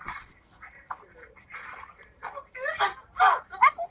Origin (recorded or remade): remade